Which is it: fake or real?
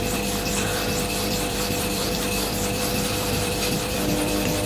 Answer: fake